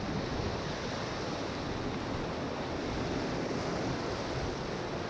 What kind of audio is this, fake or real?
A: real